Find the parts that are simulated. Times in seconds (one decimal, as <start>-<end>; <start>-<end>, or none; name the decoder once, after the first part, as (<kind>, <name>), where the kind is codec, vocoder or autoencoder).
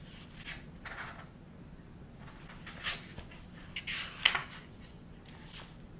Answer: 4.4-5.2 (vocoder, Vocos)